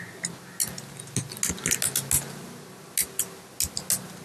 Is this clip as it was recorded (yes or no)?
yes